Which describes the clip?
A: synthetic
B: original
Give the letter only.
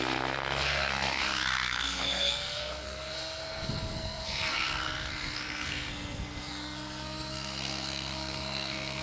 A